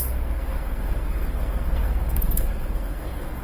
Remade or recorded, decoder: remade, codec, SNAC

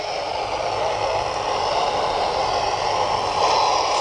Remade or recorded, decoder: recorded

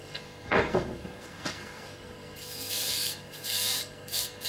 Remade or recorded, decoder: remade, codec, SNAC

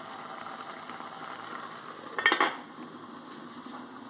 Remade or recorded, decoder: recorded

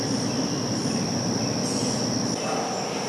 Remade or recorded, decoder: recorded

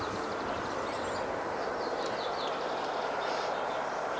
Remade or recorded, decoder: recorded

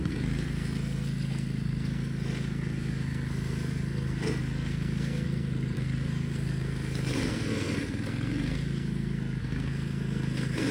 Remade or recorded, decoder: remade, codec, SNAC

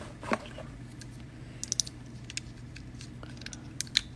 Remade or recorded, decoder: recorded